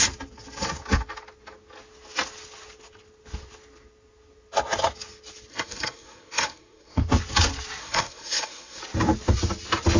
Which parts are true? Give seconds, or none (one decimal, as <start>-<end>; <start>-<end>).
0.0-5.5; 7.0-7.8; 8.8-10.0